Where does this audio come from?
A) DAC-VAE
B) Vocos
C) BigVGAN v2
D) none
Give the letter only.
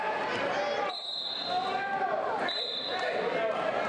D